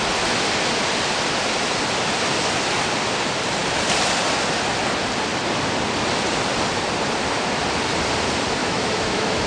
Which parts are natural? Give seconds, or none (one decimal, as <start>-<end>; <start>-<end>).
0.0-8.6